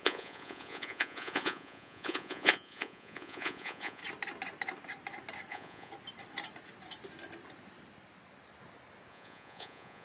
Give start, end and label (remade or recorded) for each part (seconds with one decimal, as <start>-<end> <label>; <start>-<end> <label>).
0.0-4.0 remade; 4.0-5.5 recorded; 5.5-5.9 remade; 5.9-9.1 recorded; 9.1-10.0 remade